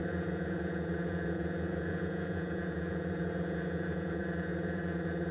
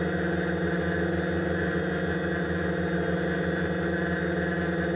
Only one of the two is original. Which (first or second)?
second